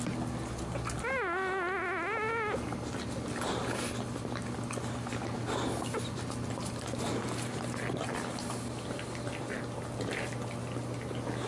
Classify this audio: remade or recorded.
recorded